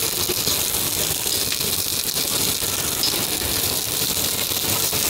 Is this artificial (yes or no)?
no